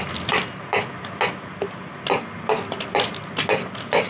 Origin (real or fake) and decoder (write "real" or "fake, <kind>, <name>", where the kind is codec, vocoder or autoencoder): real